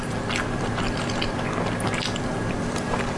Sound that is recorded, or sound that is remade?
recorded